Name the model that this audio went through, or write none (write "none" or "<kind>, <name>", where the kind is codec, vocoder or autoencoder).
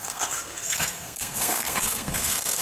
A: codec, SNAC